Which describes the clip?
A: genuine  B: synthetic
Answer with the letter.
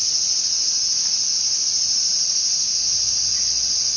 A